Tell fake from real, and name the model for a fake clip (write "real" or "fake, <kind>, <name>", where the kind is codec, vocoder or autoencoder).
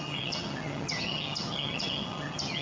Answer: fake, vocoder, HiFi-GAN